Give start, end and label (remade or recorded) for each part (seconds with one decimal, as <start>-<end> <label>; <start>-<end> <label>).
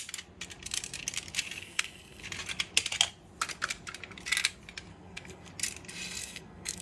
0.0-1.6 recorded; 1.6-2.2 remade; 2.2-4.9 recorded; 4.9-5.5 remade; 5.5-6.2 recorded; 6.2-6.8 remade